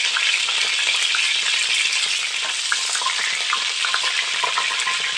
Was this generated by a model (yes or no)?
no